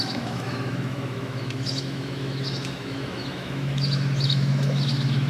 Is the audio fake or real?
fake